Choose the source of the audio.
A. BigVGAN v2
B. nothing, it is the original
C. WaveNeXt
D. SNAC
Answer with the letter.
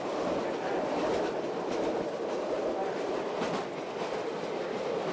B